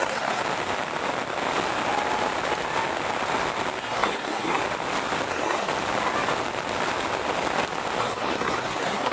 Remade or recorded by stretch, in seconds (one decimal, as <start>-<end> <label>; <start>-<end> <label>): 0.0-0.4 remade; 0.4-3.8 recorded; 3.8-4.6 remade; 4.6-5.3 recorded; 5.3-5.7 remade; 5.7-8.0 recorded; 8.0-9.1 remade

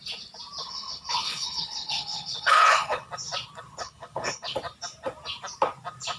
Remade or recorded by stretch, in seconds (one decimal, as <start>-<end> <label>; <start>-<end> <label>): 0.0-0.6 recorded; 0.6-3.1 remade; 3.1-3.8 recorded; 3.8-4.6 remade; 4.6-6.2 recorded

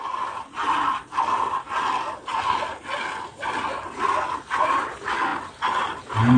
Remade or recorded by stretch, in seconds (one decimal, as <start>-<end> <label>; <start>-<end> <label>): 0.0-6.4 recorded

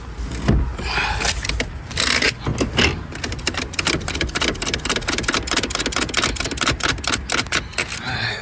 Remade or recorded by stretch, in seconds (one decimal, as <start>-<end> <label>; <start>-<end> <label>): 0.0-8.4 recorded

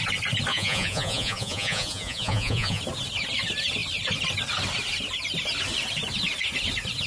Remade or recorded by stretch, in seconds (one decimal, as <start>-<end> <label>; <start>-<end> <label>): 0.0-0.5 recorded; 0.5-2.8 remade; 2.8-7.1 recorded

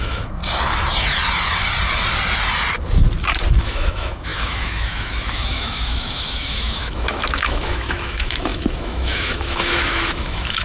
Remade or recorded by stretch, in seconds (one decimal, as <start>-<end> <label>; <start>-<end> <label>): 0.0-0.4 remade; 0.4-3.6 recorded; 3.6-10.6 remade

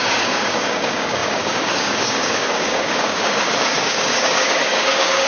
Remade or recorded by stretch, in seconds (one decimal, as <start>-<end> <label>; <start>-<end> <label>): 0.0-5.3 remade

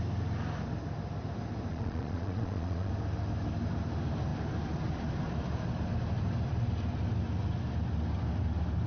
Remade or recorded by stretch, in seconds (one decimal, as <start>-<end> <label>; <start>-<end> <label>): 0.0-1.7 recorded; 1.7-2.9 remade; 2.9-8.9 recorded